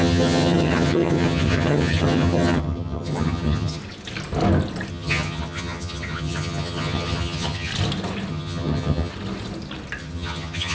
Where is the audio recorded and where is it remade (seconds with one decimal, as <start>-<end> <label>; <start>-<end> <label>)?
0.0-3.8 remade; 3.8-4.9 recorded; 4.9-7.7 remade; 7.7-8.3 recorded; 8.3-9.1 remade; 9.1-10.0 recorded; 10.0-10.7 remade